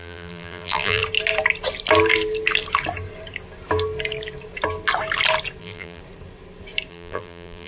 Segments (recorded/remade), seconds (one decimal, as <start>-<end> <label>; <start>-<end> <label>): 0.0-1.0 remade; 1.0-5.6 recorded; 5.6-6.0 remade; 6.0-6.9 recorded; 6.9-7.7 remade